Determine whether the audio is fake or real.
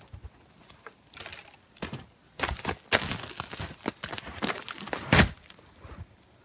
real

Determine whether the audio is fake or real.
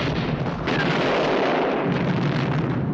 real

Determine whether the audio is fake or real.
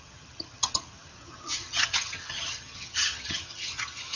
fake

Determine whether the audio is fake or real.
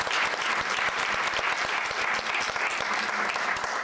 real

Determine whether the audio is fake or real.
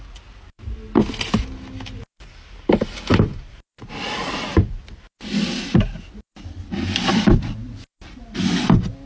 real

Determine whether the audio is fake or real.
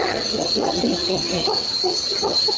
fake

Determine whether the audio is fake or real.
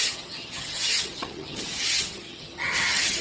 fake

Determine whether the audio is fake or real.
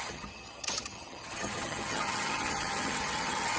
fake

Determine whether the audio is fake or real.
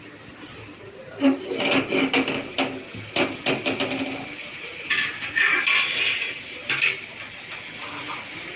real